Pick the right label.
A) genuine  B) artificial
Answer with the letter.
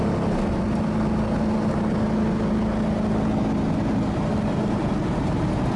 A